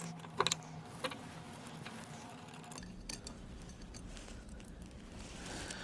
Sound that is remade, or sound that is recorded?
recorded